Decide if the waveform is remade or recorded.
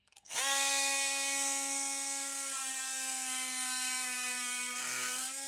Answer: remade